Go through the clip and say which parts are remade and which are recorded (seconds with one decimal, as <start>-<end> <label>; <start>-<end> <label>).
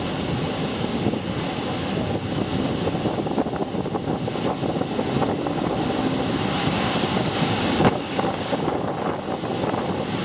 0.0-0.7 recorded; 0.7-1.3 remade; 1.3-6.6 recorded; 6.6-8.9 remade; 8.9-10.2 recorded